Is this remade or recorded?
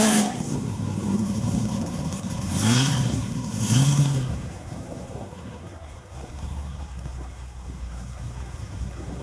remade